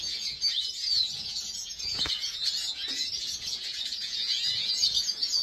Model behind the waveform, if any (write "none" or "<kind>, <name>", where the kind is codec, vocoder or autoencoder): vocoder, Vocos